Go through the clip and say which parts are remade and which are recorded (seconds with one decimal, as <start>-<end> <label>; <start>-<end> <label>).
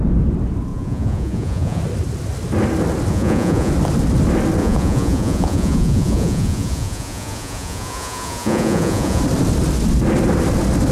0.0-0.7 recorded; 0.7-1.8 remade; 1.8-3.1 recorded; 3.1-3.7 remade; 3.7-4.6 recorded; 4.6-9.2 remade; 9.2-10.9 recorded